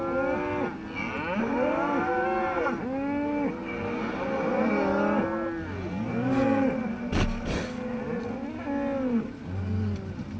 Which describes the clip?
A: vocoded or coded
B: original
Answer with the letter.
B